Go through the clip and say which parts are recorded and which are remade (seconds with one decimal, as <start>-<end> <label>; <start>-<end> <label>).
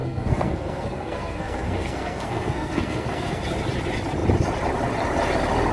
0.0-3.4 remade; 3.4-5.7 recorded